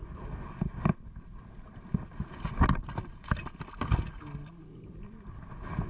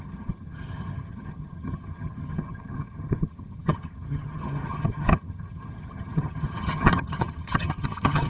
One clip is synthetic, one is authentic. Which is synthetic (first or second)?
second